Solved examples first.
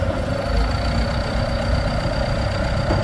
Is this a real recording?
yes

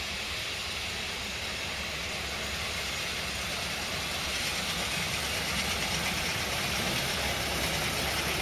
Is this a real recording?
yes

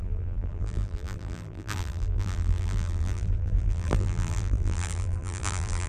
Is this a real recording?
no